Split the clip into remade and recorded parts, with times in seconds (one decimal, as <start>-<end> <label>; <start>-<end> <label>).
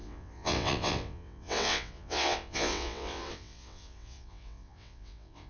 0.0-5.5 remade